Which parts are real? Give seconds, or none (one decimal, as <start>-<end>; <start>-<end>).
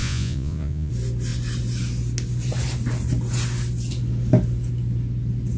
0.9-5.6